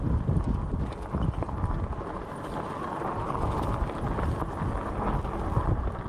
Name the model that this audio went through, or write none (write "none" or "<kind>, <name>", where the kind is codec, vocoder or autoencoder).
none